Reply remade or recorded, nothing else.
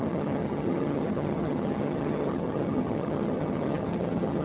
remade